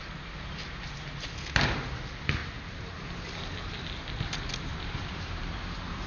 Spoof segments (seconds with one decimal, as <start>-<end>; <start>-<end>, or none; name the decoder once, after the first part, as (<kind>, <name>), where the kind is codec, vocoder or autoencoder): 2.4-3.0 (vocoder, BigVGAN v2); 4.7-6.1

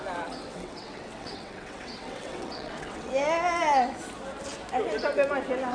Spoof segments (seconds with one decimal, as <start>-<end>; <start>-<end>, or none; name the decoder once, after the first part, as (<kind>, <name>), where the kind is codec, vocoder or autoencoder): 0.5-3.1 (vocoder, WaveNeXt)

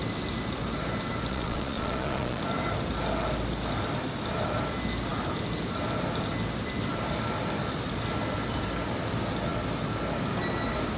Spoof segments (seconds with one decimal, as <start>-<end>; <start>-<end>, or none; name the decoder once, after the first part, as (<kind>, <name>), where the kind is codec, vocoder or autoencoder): 1.3-2.4 (vocoder, Vocos)

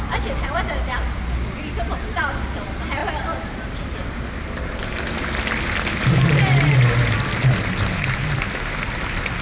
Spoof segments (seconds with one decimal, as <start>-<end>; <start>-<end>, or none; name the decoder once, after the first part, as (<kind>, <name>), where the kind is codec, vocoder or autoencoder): none

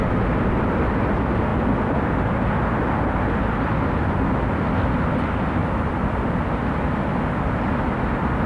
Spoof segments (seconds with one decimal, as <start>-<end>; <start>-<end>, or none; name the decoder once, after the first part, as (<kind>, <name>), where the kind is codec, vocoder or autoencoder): 5.6-6.4 (vocoder, BigVGAN v2)